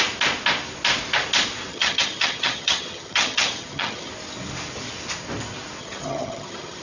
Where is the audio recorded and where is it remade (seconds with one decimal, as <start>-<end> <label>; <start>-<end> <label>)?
0.0-1.7 recorded; 1.7-4.1 remade; 4.1-5.8 recorded; 5.8-6.8 remade